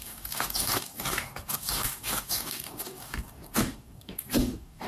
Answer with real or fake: fake